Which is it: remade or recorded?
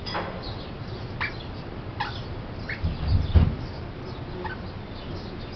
recorded